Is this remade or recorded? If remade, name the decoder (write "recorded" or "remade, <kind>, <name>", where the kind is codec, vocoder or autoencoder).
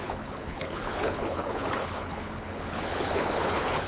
remade, codec, HILCodec